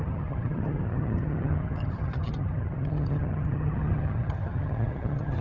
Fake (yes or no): yes